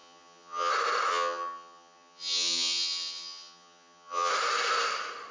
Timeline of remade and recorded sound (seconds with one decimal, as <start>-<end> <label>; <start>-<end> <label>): 0.0-0.7 remade; 0.7-1.1 recorded; 1.1-4.3 remade; 4.3-5.3 recorded